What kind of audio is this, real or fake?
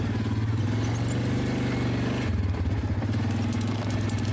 real